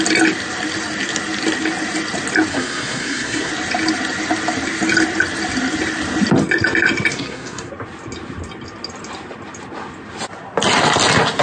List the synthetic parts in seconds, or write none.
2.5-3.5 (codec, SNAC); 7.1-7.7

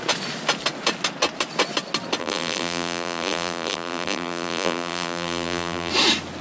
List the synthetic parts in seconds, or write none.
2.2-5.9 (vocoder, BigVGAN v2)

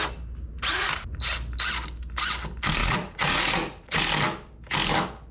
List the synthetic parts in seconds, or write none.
0.7-1.2 (vocoder, Vocos); 2.8-4.0

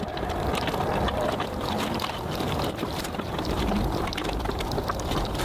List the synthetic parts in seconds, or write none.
0.0-0.5 (vocoder, BigVGAN v2); 1.2-5.4

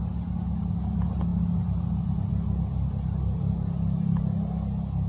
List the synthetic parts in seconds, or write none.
none